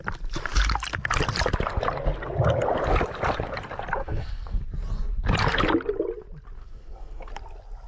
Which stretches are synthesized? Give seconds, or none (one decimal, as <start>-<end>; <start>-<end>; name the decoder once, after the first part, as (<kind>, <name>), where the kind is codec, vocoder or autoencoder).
4.0-4.6 (codec, SNAC); 6.6-7.3